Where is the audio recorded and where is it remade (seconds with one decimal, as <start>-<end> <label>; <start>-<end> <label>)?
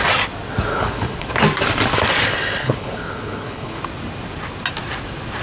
0.0-0.7 recorded; 0.7-1.3 remade; 1.3-2.6 recorded; 2.6-3.8 remade; 3.8-5.4 recorded